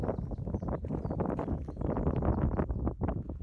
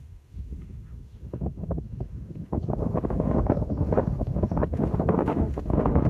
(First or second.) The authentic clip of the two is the first